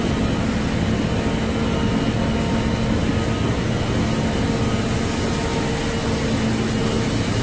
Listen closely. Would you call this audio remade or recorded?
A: recorded